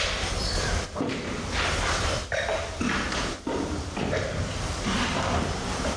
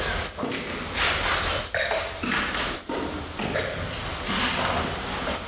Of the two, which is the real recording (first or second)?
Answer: second